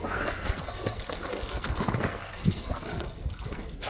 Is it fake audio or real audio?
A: fake